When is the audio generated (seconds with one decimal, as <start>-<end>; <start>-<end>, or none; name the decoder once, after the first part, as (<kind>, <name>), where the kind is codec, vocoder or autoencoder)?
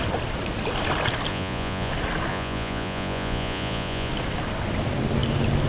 1.3-1.9 (vocoder, Vocos); 2.3-4.1